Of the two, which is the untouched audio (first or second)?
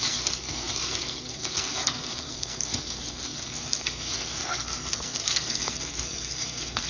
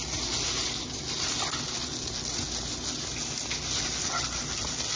second